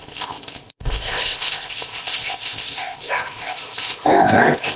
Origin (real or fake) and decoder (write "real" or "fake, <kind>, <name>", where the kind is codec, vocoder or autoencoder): fake, codec, ZipCodec